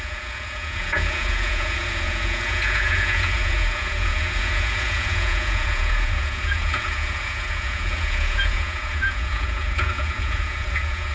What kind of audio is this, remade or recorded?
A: remade